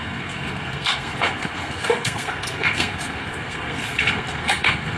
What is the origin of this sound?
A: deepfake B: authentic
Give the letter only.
A